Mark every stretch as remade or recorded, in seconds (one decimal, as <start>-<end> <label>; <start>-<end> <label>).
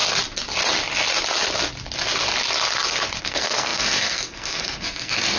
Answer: 0.0-3.2 recorded; 3.2-5.4 remade